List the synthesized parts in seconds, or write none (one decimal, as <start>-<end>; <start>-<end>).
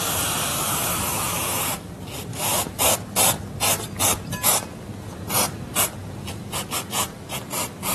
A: 0.5-1.9; 2.3-2.8